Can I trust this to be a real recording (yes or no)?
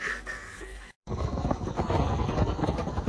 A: no